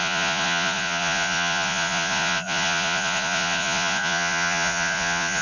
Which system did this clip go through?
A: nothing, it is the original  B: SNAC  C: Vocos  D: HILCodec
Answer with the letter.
C